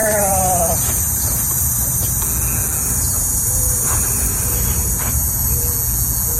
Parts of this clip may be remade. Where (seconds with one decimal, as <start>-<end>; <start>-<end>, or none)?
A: 0.0-2.2; 2.8-5.6